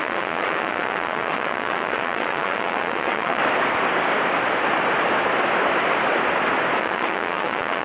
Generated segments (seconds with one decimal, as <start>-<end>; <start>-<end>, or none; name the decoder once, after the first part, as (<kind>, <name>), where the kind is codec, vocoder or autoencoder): 0.0-3.4 (vocoder, Vocos); 6.8-7.8